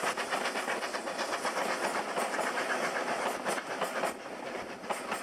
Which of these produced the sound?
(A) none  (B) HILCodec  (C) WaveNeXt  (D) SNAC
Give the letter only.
A